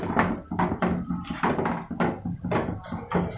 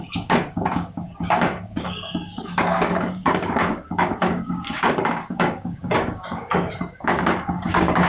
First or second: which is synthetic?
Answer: second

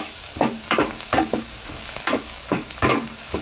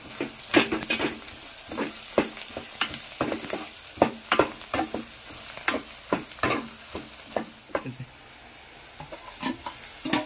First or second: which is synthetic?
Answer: first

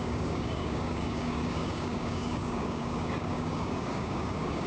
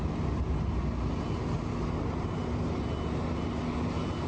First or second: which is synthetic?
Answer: first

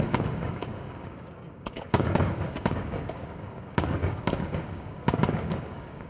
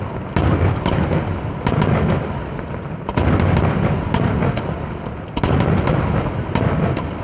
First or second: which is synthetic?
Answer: first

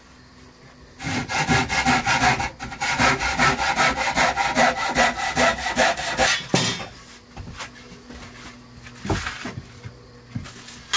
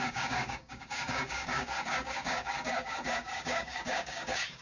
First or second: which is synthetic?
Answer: second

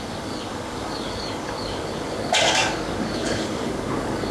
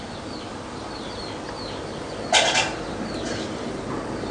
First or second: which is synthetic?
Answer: first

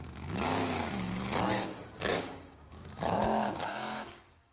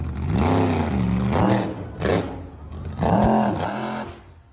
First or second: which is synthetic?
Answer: first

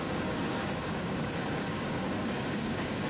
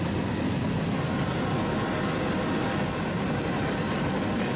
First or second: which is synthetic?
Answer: first